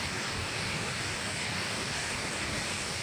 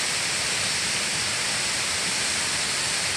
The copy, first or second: first